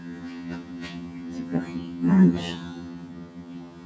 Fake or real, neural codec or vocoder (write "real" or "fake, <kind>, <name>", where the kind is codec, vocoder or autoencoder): fake, vocoder, HiFi-GAN